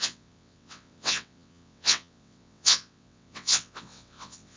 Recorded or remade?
remade